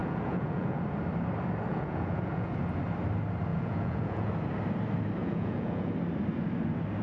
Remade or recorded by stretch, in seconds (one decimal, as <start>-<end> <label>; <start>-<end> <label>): 0.0-0.8 remade; 0.8-1.7 recorded; 1.7-2.5 remade; 2.5-3.5 recorded; 3.5-4.3 remade; 4.3-5.2 recorded; 5.2-5.9 remade; 5.9-7.0 recorded